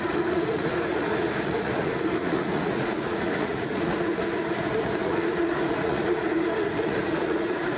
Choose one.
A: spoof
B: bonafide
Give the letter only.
A